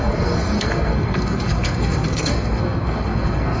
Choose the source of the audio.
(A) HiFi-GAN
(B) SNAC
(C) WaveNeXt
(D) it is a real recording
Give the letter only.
B